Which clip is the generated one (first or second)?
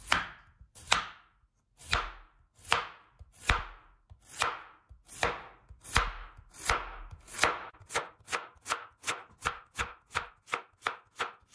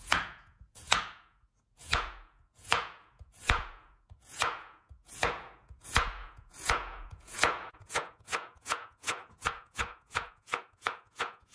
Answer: second